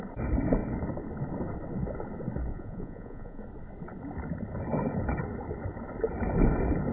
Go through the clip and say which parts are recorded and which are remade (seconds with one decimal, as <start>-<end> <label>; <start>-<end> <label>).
0.0-2.5 recorded; 2.5-3.4 remade; 3.4-6.9 recorded